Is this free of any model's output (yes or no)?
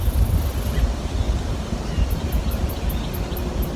yes